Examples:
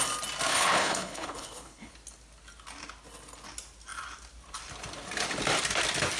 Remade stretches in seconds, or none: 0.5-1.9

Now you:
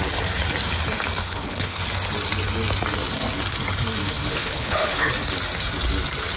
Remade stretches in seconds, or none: 1.2-1.8; 4.0-5.1

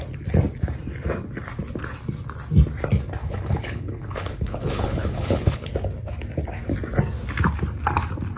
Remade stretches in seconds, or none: 3.2-5.7

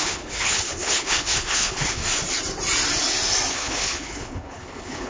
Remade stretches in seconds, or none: 0.0-2.0; 3.5-5.1

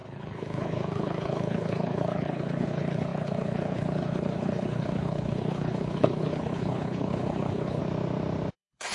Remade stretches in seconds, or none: 0.0-7.8; 8.5-8.9

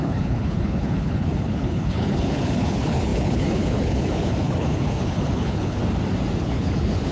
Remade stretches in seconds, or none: 0.0-5.8; 6.4-7.1

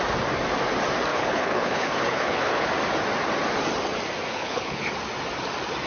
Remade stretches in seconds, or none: 1.1-2.7; 4.3-4.9

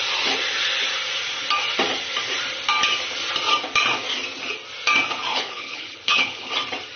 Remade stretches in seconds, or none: 5.3-6.5